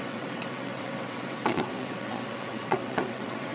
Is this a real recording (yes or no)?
no